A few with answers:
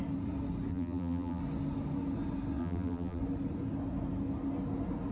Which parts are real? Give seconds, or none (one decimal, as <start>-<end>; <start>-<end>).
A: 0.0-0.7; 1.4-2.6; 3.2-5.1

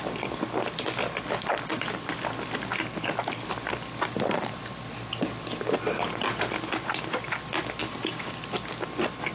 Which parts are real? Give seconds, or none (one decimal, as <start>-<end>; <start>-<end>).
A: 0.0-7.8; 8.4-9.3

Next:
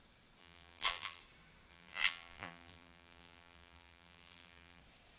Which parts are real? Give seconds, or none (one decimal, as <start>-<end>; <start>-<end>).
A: 0.0-0.4; 1.2-1.7; 4.8-5.2